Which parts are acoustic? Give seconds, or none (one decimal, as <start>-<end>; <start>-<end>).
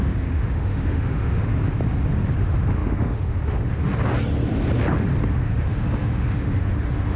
1.5-2.4; 3.8-5.2